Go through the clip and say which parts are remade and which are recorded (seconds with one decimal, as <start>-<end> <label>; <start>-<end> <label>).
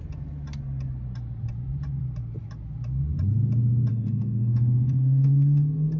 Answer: 0.0-3.9 recorded; 3.9-6.0 remade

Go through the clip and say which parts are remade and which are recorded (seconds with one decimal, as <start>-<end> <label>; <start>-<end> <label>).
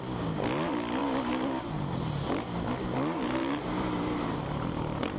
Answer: 0.0-1.0 recorded; 1.0-1.8 remade; 1.8-3.4 recorded; 3.4-4.4 remade; 4.4-5.2 recorded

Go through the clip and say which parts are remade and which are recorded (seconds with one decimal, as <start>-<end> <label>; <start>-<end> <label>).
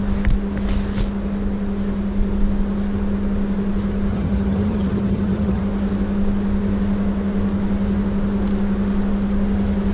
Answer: 0.0-4.1 recorded; 4.1-5.6 remade; 5.6-9.9 recorded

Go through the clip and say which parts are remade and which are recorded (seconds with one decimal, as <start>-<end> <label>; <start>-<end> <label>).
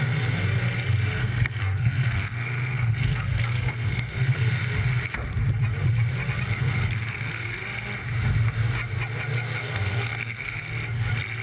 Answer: 0.0-1.2 recorded; 1.2-4.5 remade; 4.5-6.6 recorded; 6.6-7.6 remade; 7.6-9.6 recorded; 9.6-10.7 remade; 10.7-11.4 recorded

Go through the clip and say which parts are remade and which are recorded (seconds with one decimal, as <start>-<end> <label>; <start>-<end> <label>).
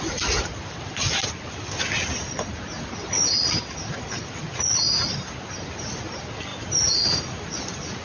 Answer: 0.0-6.5 recorded; 6.5-7.2 remade; 7.2-8.0 recorded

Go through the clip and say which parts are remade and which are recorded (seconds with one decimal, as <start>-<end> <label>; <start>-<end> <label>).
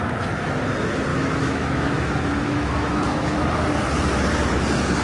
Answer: 0.0-1.1 recorded; 1.1-3.5 remade; 3.5-5.0 recorded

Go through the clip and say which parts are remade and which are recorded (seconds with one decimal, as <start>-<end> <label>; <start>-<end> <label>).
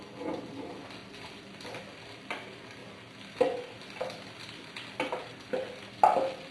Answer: 0.0-6.5 recorded